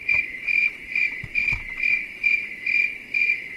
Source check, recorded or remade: remade